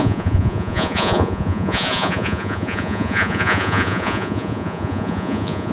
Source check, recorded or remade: remade